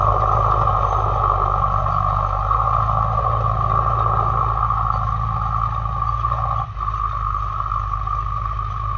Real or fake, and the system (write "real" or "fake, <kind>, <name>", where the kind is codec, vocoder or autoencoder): real